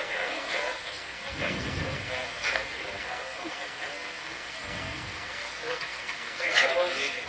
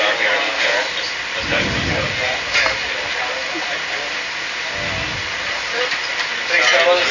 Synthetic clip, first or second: first